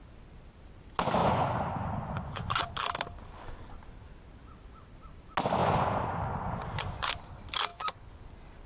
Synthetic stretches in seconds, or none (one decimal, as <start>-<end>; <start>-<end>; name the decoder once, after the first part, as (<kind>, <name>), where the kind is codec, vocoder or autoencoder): 1.2-2.7 (vocoder, Vocos); 5.6-7.1; 7.7-8.2